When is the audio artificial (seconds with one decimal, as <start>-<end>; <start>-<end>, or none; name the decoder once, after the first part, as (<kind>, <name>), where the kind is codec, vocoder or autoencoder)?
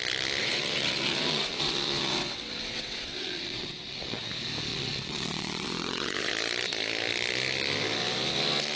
0.4-4.3 (vocoder, WaveNeXt); 4.7-6.3